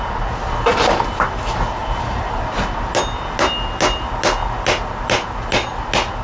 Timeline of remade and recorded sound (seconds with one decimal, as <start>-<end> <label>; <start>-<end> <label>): 0.0-1.8 recorded; 1.8-2.4 remade; 2.4-6.2 recorded